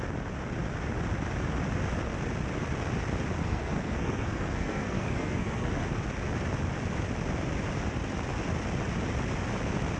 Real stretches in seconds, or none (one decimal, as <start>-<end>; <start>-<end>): 0.0-3.4; 5.7-10.0